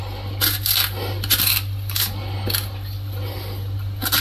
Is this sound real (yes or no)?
yes